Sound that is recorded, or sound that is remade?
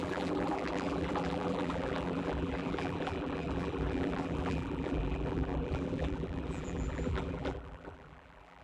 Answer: remade